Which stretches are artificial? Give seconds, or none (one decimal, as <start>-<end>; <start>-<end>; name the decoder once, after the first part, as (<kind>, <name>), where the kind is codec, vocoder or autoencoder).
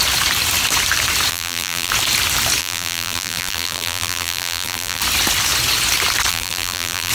1.3-1.9 (vocoder, BigVGAN v2); 2.6-5.0; 6.3-7.1